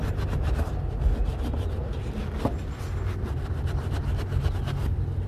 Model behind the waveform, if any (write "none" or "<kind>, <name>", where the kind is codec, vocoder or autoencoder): none